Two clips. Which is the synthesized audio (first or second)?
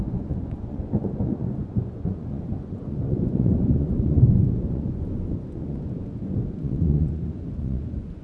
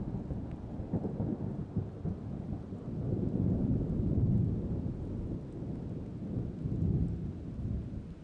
first